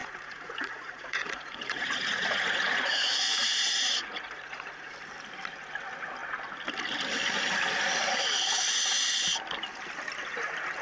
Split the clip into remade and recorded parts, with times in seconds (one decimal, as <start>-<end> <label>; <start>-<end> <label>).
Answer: 0.0-4.9 remade; 4.9-10.8 recorded